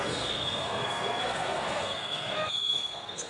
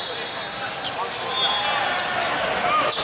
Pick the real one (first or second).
second